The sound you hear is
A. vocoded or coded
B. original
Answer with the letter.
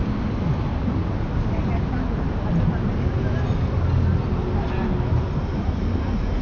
B